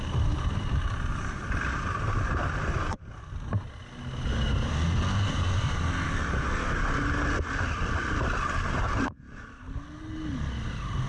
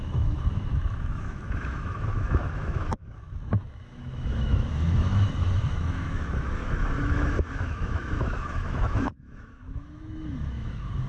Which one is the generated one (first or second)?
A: second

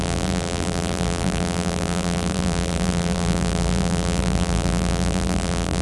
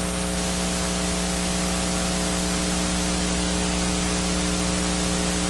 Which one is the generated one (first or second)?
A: first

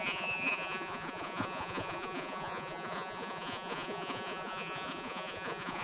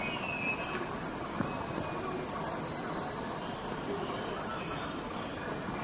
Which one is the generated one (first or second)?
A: first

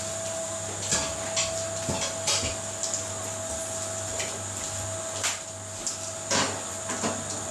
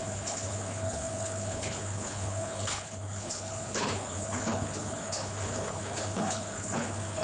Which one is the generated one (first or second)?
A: second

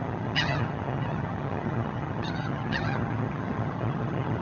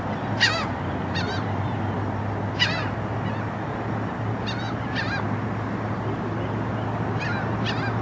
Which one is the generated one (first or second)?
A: first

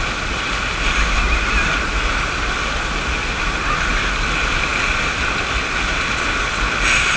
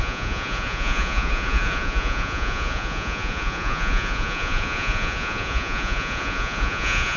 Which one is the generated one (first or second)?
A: second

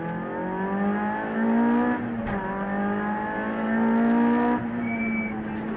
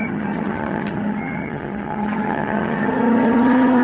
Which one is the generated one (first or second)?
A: second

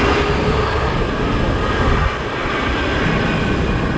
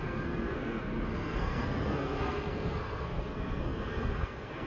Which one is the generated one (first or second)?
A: second